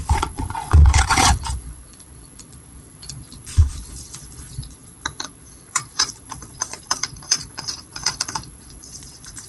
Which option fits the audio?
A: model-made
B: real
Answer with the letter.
A